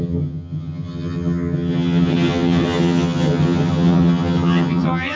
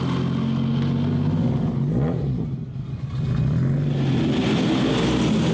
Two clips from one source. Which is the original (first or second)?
second